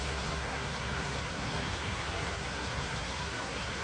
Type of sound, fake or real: fake